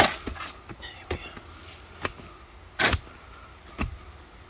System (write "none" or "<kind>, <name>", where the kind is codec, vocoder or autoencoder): none